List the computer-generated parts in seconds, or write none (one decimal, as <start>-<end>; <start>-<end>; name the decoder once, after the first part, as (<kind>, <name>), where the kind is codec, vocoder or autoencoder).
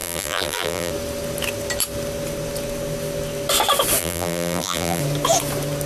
0.0-0.9 (vocoder, BigVGAN v2); 4.0-5.0